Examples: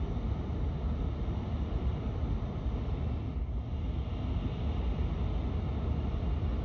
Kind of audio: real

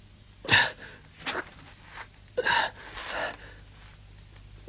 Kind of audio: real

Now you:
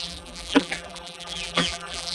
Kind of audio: fake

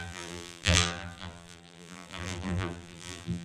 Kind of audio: fake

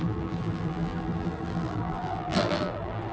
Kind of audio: fake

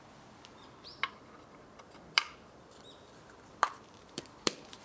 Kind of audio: fake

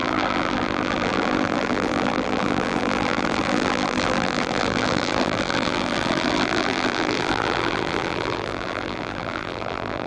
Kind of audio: fake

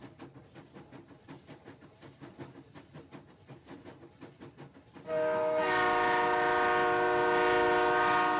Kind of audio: real